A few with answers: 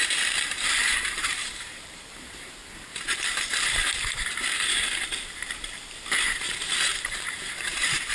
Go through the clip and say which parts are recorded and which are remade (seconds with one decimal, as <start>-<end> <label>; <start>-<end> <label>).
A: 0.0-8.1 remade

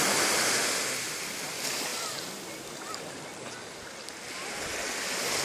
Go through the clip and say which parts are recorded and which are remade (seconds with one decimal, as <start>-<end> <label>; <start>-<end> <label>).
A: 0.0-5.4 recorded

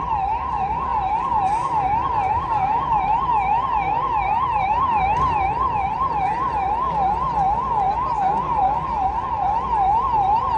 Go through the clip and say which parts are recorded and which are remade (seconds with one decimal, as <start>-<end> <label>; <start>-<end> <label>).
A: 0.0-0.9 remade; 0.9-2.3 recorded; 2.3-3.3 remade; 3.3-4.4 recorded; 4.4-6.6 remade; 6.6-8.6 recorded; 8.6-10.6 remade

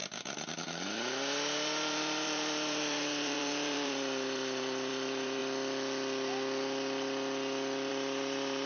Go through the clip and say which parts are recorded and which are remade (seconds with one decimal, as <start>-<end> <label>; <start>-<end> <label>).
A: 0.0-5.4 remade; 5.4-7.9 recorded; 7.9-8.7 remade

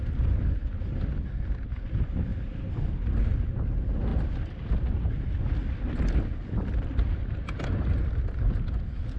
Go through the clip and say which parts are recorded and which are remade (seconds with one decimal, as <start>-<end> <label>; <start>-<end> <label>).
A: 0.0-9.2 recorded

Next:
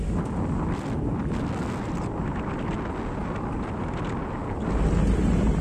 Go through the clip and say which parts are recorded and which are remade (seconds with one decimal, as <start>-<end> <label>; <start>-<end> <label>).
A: 0.0-5.6 recorded

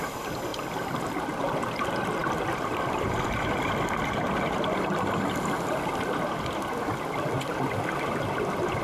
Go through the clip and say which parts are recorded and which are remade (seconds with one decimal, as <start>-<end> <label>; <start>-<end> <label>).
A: 0.0-0.5 recorded; 0.5-1.1 remade; 1.1-8.8 recorded

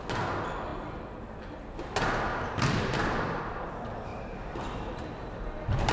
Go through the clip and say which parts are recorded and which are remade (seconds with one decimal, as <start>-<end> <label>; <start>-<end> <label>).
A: 0.0-2.3 recorded; 2.3-3.4 remade; 3.4-4.1 recorded; 4.1-5.9 remade